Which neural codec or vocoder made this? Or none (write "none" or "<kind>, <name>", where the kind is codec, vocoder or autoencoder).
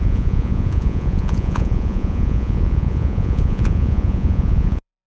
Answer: vocoder, Vocos